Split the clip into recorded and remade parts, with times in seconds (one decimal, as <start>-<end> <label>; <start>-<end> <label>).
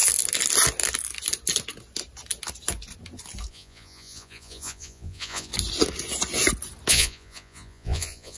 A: 0.0-3.5 recorded; 3.5-5.5 remade; 5.5-6.9 recorded; 6.9-8.4 remade